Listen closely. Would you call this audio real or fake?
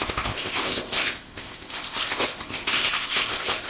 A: fake